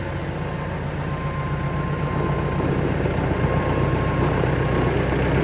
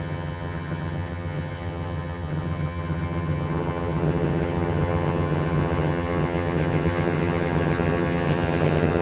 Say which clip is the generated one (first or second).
second